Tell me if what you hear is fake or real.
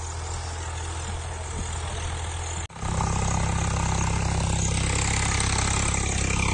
real